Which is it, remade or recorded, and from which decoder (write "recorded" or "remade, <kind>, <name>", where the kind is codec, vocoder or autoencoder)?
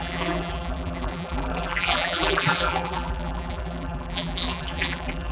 remade, vocoder, BigVGAN v2